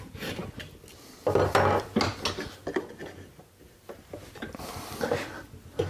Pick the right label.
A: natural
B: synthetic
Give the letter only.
A